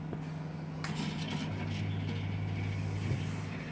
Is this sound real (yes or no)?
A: yes